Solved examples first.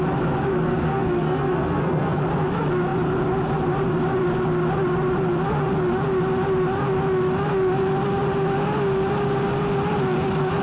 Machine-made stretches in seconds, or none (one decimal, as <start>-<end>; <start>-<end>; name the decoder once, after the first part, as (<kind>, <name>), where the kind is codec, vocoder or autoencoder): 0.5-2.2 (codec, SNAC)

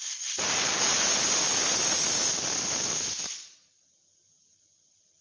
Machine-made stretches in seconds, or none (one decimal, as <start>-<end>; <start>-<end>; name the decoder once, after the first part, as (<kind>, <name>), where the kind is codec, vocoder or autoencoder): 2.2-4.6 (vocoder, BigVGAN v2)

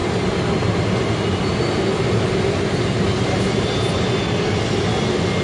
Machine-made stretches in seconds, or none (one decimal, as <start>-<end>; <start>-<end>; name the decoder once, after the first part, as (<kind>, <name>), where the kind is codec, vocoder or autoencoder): none

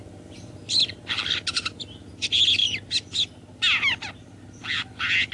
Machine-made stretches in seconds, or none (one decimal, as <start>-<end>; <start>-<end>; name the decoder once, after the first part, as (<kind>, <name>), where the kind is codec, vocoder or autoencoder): none

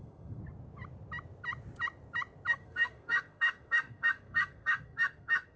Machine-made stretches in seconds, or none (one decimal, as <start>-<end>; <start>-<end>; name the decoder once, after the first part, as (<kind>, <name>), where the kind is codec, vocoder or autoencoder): 0.0-0.4 (codec, SNAC); 2.5-5.6